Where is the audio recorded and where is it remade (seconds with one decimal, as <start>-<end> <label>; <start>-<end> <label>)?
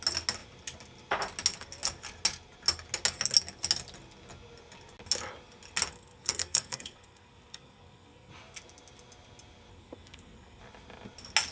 0.0-5.9 recorded; 5.9-8.3 remade; 8.3-9.7 recorded; 9.7-10.6 remade; 10.6-11.5 recorded